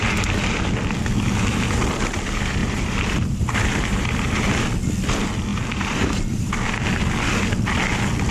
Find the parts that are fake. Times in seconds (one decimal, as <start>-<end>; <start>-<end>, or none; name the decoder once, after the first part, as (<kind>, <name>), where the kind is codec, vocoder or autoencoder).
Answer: 2.6-4.5 (vocoder, BigVGAN v2); 5.5-6.5